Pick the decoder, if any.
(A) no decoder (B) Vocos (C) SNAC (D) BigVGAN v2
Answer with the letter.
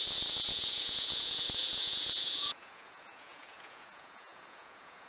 B